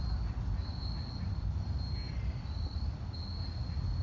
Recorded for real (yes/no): yes